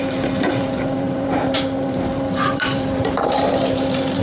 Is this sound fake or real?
fake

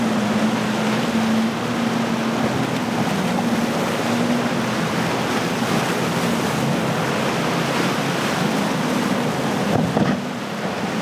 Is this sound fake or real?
real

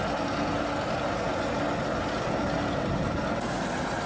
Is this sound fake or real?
real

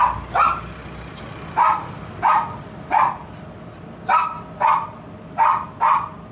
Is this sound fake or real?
real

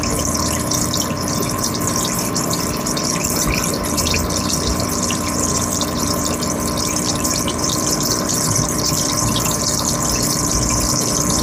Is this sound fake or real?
fake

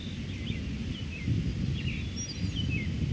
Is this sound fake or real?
real